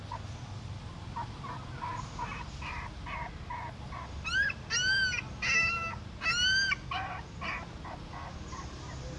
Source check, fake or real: real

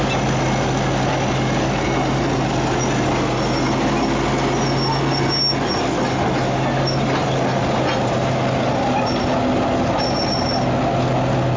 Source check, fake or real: real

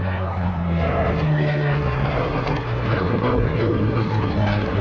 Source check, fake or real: fake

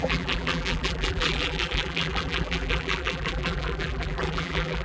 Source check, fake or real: fake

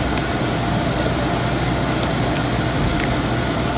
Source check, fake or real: real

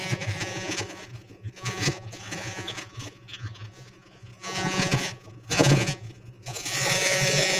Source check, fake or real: fake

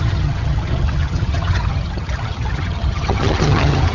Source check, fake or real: fake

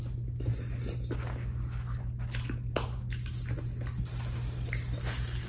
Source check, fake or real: real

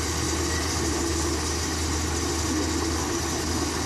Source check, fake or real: real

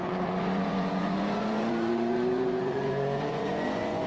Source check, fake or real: fake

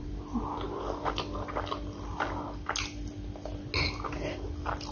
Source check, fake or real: real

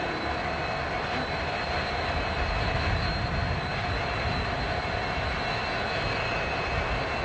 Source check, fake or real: real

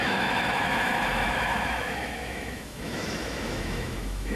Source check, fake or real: fake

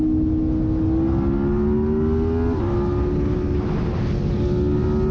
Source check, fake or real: real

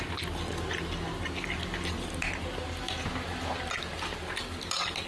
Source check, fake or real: real